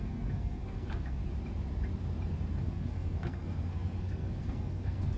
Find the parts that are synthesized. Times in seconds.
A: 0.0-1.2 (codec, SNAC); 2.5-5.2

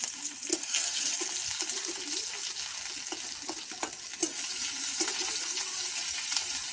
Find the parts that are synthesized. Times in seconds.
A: 0.5-1.1 (codec, SNAC)

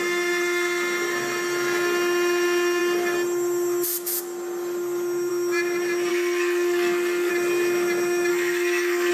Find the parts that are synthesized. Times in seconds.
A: 6.1-7.3 (codec, SNAC); 8.3-9.1

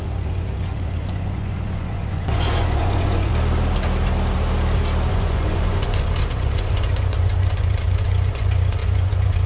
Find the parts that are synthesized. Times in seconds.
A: 0.0-3.3 (vocoder, Vocos); 5.1-9.5

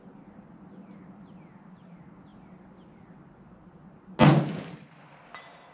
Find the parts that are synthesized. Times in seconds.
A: none

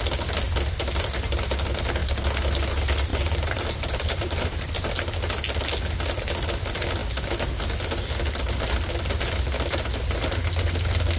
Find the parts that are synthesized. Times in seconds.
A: 3.1-4.9 (vocoder, BigVGAN v2)

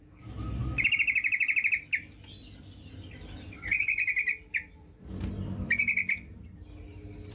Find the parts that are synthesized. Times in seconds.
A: none

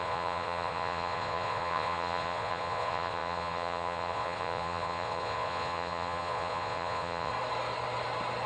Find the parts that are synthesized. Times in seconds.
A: 0.0-7.3 (vocoder, Vocos)